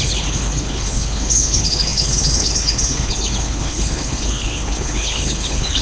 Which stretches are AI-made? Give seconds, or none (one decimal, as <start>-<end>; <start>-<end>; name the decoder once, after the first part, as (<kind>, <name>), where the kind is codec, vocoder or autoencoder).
0.0-5.8 (codec, HILCodec)